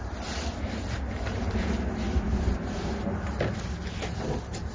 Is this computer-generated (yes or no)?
no